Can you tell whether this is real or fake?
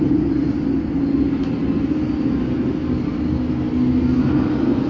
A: real